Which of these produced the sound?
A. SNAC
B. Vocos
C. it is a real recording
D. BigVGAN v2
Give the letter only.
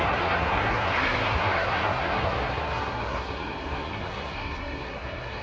A